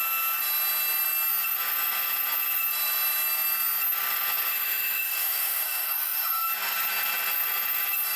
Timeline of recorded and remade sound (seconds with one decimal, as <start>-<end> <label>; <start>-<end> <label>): 0.0-4.5 recorded; 4.5-6.5 remade; 6.5-8.2 recorded